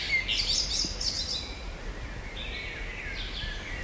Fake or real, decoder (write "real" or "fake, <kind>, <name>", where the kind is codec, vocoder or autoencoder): real